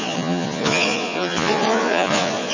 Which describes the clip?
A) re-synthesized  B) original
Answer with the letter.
A